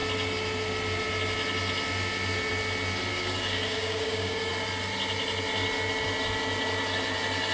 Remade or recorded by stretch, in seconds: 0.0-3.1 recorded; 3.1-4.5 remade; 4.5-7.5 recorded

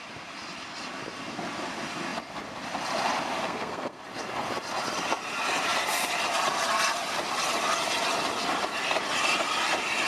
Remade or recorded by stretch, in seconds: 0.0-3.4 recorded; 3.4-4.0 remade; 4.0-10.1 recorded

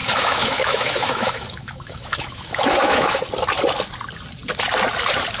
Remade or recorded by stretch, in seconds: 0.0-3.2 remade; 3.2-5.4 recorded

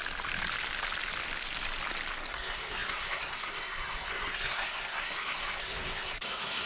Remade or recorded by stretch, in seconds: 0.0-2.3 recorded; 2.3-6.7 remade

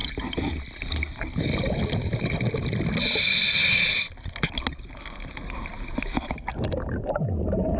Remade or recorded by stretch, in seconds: 0.0-7.8 recorded

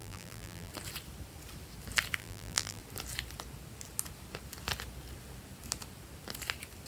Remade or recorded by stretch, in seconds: 0.0-0.7 remade; 0.7-2.2 recorded; 2.2-2.8 remade; 2.8-6.9 recorded

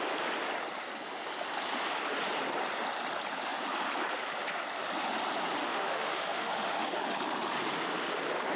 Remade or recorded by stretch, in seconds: 0.0-5.6 recorded; 5.6-7.0 remade; 7.0-8.6 recorded

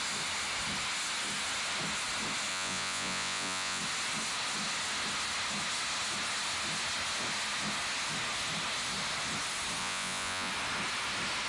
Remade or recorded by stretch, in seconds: 0.0-2.5 recorded; 2.5-3.8 remade; 3.8-9.8 recorded; 9.8-10.5 remade; 10.5-11.5 recorded